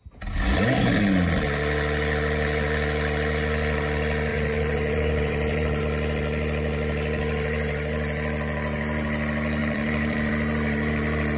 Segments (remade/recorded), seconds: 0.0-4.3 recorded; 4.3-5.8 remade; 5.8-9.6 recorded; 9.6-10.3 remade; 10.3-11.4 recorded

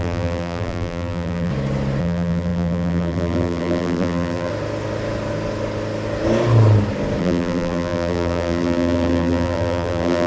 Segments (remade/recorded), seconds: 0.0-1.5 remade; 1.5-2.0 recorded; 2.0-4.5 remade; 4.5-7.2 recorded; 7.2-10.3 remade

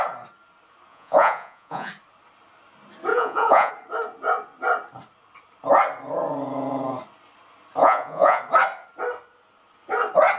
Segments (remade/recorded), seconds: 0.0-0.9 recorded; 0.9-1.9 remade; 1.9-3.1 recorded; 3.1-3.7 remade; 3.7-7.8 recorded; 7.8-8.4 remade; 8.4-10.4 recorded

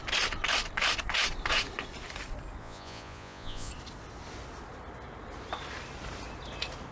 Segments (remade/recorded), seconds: 0.0-2.6 recorded; 2.6-3.7 remade; 3.7-6.9 recorded